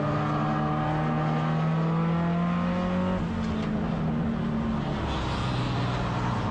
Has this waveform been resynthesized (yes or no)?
no